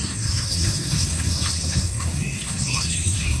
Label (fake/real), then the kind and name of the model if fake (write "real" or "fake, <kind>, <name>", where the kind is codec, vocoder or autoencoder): fake, codec, SNAC